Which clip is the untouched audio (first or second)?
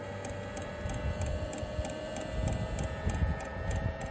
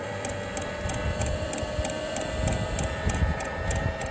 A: first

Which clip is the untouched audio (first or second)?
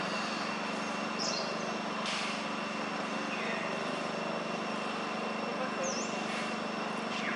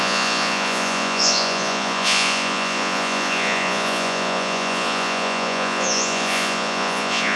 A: first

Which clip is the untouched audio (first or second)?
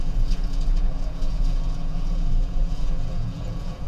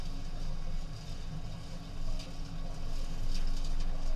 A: second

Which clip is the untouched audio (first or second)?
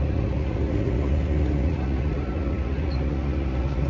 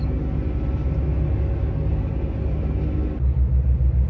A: second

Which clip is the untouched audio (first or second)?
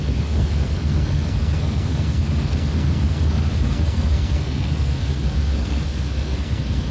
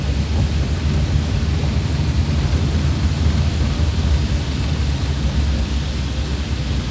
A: second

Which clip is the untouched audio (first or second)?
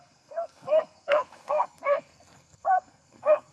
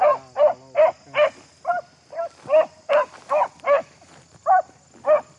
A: second